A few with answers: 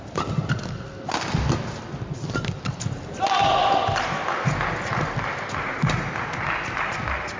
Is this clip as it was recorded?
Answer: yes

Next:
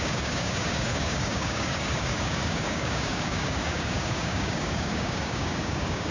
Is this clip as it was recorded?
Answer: no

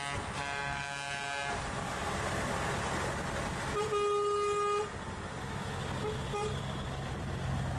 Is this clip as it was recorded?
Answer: yes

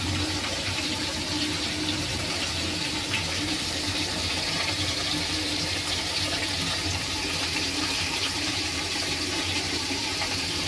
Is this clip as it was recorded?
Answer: no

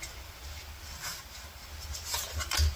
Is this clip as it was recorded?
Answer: yes